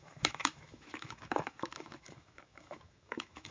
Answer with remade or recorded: remade